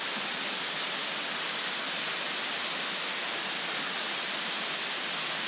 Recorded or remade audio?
recorded